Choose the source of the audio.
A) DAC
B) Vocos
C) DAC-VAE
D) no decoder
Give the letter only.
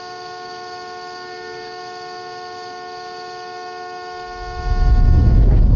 D